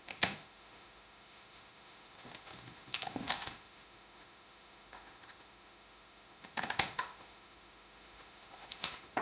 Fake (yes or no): yes